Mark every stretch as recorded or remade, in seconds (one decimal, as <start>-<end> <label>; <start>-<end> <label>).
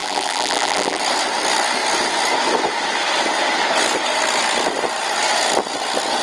0.0-1.0 remade; 1.0-6.2 recorded